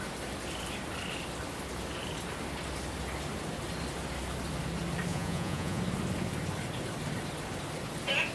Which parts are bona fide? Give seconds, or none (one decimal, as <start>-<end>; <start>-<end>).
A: 0.0-5.1; 5.8-8.3